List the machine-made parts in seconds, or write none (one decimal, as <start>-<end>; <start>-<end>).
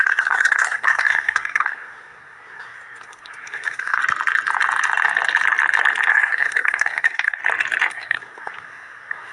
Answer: 0.0-4.0; 6.1-7.4; 7.9-9.3